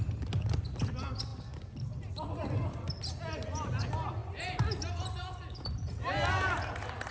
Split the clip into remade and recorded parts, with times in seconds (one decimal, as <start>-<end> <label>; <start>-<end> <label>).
0.0-7.1 recorded